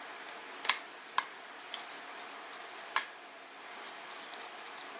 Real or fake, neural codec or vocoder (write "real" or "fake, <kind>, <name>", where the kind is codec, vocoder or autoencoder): real